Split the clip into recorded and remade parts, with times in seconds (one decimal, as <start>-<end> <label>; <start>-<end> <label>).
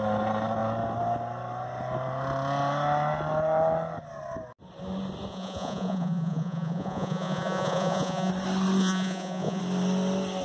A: 0.0-5.3 recorded; 5.3-8.3 remade; 8.3-8.8 recorded; 8.8-9.6 remade; 9.6-10.4 recorded